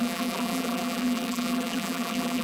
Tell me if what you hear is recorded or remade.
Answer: remade